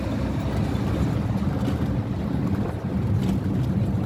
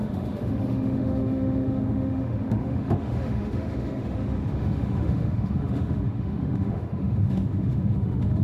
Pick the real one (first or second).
first